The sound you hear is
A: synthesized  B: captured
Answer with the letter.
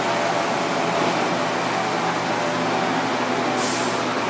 B